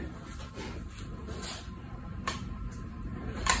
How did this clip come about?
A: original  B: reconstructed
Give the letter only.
B